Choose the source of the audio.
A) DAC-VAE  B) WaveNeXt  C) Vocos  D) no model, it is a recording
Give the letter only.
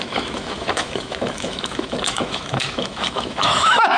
A